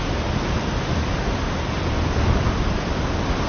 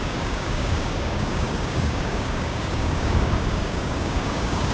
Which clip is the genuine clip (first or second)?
first